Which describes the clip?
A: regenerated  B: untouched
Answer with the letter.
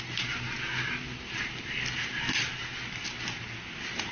B